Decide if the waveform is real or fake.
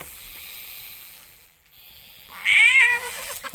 fake